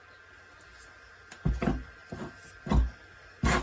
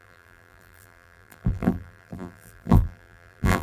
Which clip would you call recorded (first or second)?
first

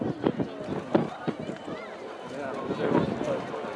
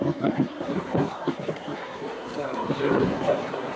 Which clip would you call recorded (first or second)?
first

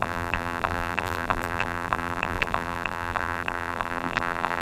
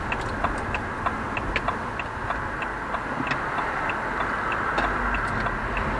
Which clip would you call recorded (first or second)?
second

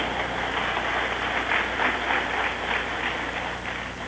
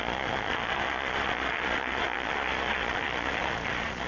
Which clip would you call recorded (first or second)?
first